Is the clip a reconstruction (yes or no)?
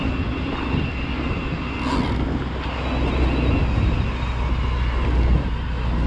no